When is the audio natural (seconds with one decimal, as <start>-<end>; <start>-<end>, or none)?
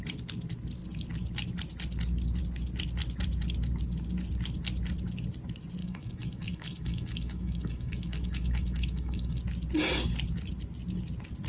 0.0-5.8; 9.4-11.5